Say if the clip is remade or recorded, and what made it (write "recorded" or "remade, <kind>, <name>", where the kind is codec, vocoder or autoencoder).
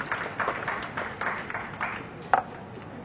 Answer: recorded